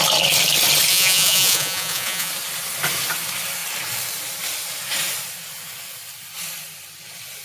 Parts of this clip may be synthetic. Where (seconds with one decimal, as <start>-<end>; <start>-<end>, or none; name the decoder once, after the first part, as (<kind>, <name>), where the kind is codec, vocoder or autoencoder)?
0.9-2.3 (vocoder, Vocos)